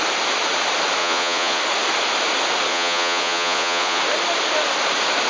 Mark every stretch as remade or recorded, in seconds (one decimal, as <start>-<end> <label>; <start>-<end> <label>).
0.0-1.0 recorded; 1.0-1.6 remade; 1.6-2.7 recorded; 2.7-4.0 remade; 4.0-5.3 recorded

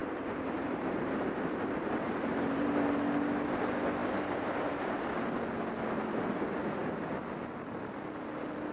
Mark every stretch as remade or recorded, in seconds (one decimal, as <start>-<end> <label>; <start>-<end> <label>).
0.0-2.8 remade; 2.8-4.0 recorded; 4.0-5.0 remade; 5.0-8.7 recorded

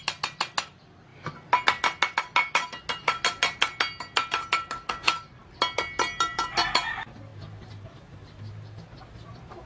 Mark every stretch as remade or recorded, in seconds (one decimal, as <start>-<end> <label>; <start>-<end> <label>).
0.0-9.7 recorded

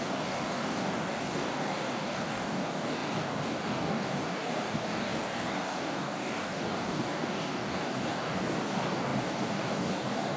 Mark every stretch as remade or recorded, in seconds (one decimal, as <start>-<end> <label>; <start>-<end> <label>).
0.0-10.4 remade

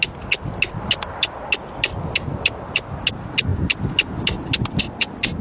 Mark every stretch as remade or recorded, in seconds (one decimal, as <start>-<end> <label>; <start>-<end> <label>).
0.0-5.4 recorded

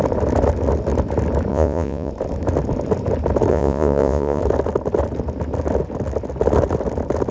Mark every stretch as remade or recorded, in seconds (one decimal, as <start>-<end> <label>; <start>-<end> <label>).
0.0-1.5 recorded; 1.5-2.1 remade; 2.1-3.5 recorded; 3.5-4.4 remade; 4.4-7.3 recorded

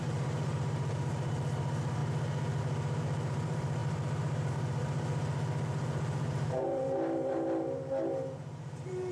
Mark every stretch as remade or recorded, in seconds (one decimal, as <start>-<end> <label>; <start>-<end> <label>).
0.0-2.0 remade; 2.0-2.6 recorded; 2.6-9.1 remade

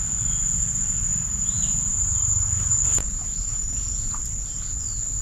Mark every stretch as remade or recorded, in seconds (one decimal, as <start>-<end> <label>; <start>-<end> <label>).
0.0-1.1 recorded; 1.1-4.2 remade; 4.2-5.2 recorded